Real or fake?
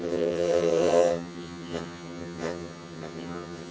fake